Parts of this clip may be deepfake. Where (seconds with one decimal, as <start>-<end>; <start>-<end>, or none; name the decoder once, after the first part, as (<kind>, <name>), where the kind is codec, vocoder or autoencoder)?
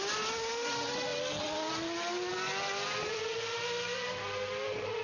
none